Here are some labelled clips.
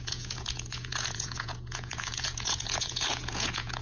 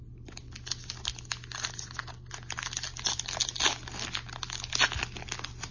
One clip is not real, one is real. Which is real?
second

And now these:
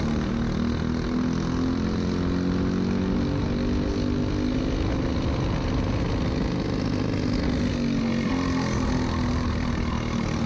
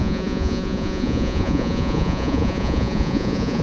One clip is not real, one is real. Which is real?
first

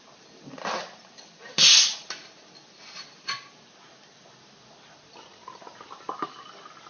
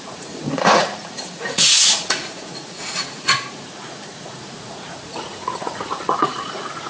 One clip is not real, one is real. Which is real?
first